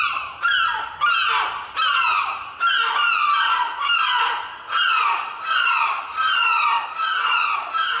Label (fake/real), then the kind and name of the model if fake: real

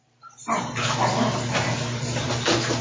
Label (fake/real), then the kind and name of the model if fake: real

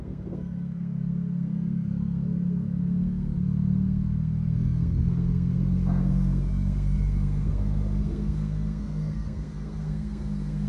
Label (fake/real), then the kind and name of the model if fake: fake, codec, SNAC